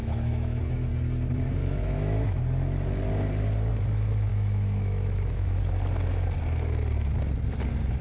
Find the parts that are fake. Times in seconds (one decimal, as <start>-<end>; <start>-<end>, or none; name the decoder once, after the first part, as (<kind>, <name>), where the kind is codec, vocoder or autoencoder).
0.0-0.6 (autoencoder, DAC-VAE); 1.6-2.4; 4.3-5.6